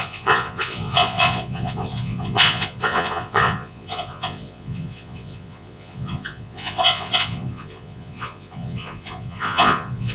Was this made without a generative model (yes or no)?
no